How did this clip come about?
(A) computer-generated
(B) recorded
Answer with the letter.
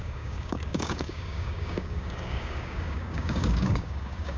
A